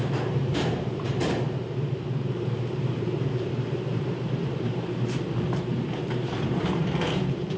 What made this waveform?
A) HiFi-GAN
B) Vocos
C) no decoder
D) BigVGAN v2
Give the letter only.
D